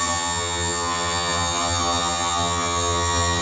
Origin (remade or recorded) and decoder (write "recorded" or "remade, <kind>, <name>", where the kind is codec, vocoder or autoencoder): remade, vocoder, HiFi-GAN